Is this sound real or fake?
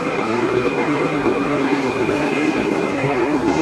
fake